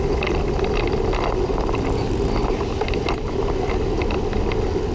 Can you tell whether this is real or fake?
real